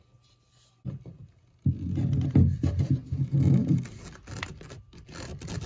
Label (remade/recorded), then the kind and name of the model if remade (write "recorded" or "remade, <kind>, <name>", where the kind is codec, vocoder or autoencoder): recorded